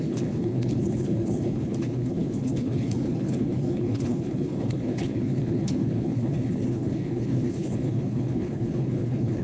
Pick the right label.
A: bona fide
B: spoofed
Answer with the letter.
B